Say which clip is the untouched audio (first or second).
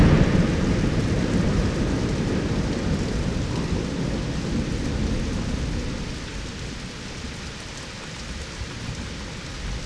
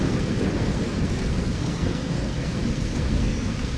first